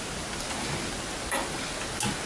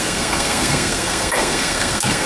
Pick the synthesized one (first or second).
second